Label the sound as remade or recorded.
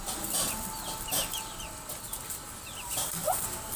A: recorded